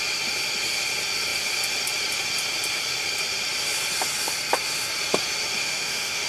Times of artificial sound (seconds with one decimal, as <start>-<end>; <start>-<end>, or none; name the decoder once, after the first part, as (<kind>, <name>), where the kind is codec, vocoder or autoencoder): 5.6-6.3 (autoencoder, DAC-VAE)

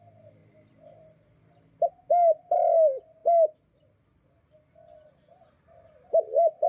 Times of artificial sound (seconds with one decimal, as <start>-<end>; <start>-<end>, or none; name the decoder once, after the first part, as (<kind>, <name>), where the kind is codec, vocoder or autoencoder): none

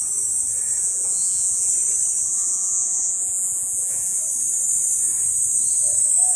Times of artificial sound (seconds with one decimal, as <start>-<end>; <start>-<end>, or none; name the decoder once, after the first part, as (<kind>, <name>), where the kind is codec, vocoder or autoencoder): 0.8-1.7 (vocoder, Vocos); 2.3-4.2

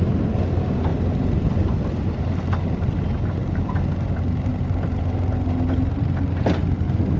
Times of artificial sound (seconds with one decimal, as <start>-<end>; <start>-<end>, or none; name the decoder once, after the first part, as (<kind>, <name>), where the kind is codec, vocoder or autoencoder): none

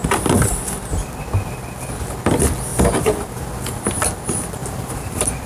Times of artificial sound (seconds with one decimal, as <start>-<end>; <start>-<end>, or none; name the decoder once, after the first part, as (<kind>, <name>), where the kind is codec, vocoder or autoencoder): 2.7-3.5 (vocoder, BigVGAN v2); 4.6-5.5